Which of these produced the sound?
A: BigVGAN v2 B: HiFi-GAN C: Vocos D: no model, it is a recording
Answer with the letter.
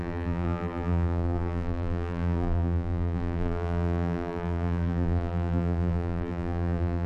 A